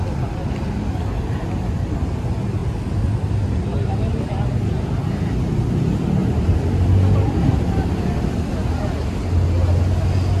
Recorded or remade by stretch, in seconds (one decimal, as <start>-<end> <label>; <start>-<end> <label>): 0.0-6.2 recorded; 6.2-8.5 remade; 8.5-10.4 recorded